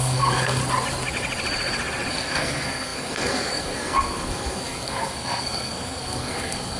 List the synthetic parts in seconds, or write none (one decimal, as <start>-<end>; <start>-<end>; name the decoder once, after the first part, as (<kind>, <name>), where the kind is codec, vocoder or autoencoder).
0.0-0.6 (codec, SNAC); 2.1-6.8